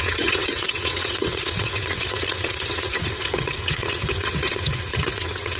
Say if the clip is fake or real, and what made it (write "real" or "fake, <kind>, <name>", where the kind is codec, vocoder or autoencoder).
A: fake, vocoder, WaveNeXt